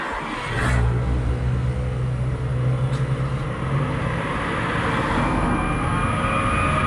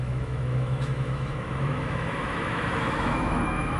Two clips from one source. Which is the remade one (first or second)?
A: second